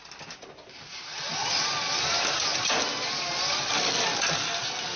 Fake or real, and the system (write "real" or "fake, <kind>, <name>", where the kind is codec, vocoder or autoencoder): real